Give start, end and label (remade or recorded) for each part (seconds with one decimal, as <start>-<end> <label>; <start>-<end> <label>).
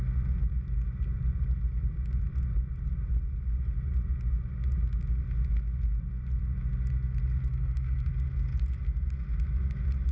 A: 0.0-7.5 recorded; 7.5-8.1 remade; 8.1-10.1 recorded